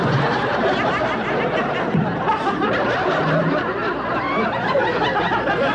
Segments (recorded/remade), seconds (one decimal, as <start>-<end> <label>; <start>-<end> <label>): 0.0-5.7 recorded